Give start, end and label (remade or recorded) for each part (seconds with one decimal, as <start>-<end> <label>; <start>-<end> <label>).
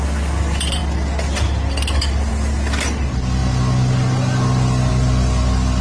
0.0-5.8 recorded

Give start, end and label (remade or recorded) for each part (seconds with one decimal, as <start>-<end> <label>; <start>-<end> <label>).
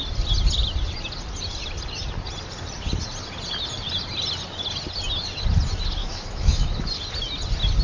0.0-6.0 recorded; 6.0-6.9 remade; 6.9-7.8 recorded